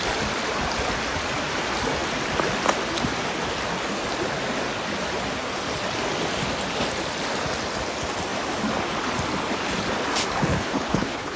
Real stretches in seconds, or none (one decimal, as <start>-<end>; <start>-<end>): 0.0-10.5